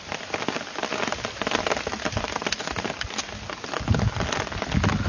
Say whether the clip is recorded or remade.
recorded